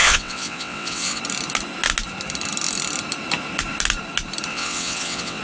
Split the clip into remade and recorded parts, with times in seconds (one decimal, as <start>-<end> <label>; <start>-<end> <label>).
0.0-1.2 remade; 1.2-4.5 recorded; 4.5-5.4 remade

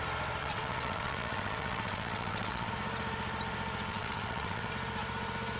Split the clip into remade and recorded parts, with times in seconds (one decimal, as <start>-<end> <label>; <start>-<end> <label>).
0.0-0.4 recorded; 0.4-2.7 remade; 2.7-3.9 recorded; 3.9-4.7 remade; 4.7-5.6 recorded

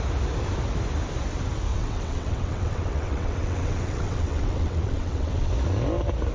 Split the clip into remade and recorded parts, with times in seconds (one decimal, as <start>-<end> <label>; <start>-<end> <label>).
0.0-1.7 recorded; 1.7-5.5 remade; 5.5-6.3 recorded

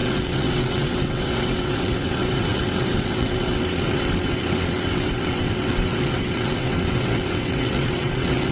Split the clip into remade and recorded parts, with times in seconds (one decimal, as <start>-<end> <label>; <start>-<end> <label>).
0.0-8.5 remade

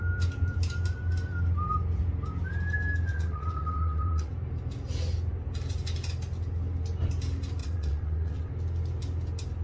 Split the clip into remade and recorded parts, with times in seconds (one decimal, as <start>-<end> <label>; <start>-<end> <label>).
0.0-3.1 recorded; 3.1-4.3 remade; 4.3-7.6 recorded; 7.6-8.5 remade; 8.5-9.6 recorded

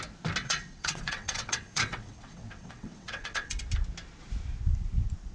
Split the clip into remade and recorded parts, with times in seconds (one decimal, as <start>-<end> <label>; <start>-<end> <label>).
0.0-0.4 recorded; 0.4-3.6 remade; 3.6-5.3 recorded

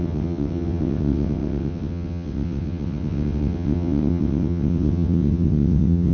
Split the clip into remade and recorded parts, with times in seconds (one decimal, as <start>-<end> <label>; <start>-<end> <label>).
0.0-6.1 remade

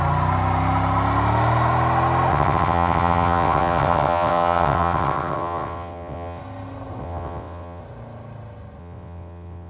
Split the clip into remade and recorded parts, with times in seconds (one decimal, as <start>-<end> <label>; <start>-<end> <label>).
0.0-2.3 recorded; 2.3-6.4 remade; 6.4-7.0 recorded; 7.0-7.8 remade; 7.8-8.8 recorded; 8.8-9.7 remade